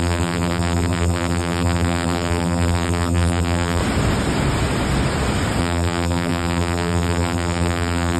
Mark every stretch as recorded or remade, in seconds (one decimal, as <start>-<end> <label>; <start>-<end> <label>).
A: 0.0-3.8 remade; 3.8-5.6 recorded; 5.6-8.2 remade